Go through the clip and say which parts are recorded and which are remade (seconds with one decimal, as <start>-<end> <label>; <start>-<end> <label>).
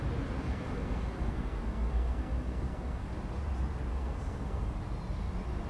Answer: 0.0-0.4 recorded; 0.4-3.1 remade; 3.1-3.9 recorded; 3.9-4.6 remade; 4.6-5.7 recorded